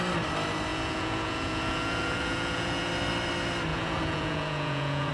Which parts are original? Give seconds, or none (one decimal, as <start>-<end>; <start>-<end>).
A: 0.0-0.7; 2.9-3.7

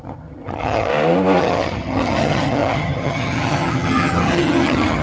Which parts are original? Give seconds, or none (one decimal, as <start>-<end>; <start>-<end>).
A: 0.9-1.4

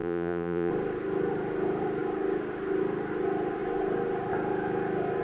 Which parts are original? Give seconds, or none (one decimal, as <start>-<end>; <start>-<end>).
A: 0.7-5.2

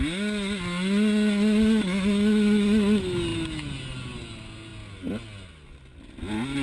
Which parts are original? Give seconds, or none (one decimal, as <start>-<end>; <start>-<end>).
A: 0.0-6.6

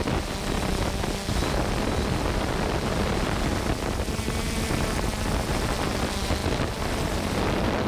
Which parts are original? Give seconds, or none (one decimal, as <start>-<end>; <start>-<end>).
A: 0.0-7.9

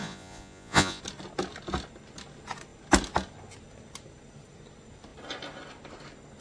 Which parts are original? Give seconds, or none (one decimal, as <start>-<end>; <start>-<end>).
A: 1.0-6.4